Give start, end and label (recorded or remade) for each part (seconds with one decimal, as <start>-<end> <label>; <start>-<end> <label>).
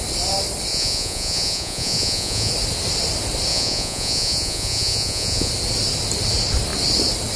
0.0-0.7 recorded; 0.7-2.5 remade; 2.5-3.5 recorded; 3.5-5.5 remade; 5.5-7.4 recorded